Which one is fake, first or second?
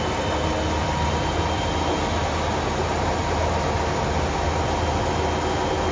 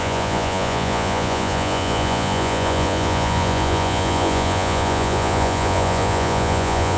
second